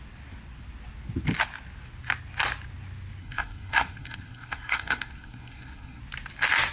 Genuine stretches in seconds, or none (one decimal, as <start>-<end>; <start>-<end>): 0.0-3.2; 6.0-6.7

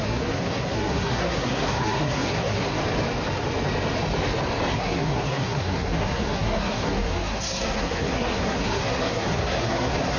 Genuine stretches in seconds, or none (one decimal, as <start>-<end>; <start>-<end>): 2.8-4.7